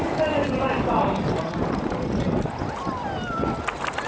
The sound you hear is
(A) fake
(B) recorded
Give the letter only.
B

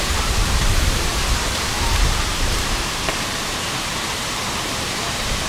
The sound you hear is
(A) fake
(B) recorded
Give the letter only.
A